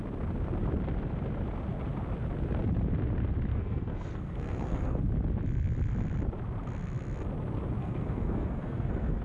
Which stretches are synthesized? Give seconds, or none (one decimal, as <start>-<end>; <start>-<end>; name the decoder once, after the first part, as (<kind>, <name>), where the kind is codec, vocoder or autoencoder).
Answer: 3.5-5.0 (codec, SNAC); 7.8-9.2